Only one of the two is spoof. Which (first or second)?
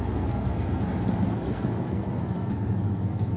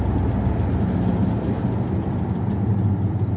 first